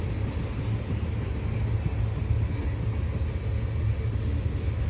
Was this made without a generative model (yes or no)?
yes